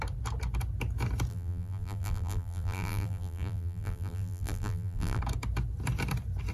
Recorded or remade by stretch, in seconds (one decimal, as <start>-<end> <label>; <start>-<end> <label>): 0.0-1.3 recorded; 1.3-5.2 remade; 5.2-6.5 recorded